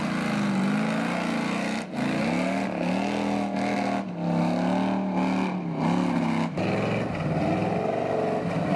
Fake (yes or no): no